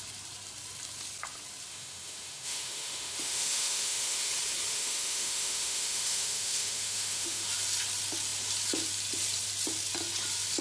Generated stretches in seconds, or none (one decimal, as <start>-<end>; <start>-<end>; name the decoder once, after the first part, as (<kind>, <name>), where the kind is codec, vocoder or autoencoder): 1.7-4.3 (autoencoder, DAC-VAE); 4.7-7.5